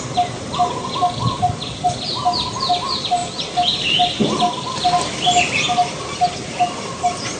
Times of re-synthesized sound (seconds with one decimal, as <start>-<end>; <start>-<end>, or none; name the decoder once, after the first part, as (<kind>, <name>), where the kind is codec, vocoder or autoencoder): none